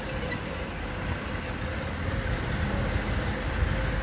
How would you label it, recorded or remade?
recorded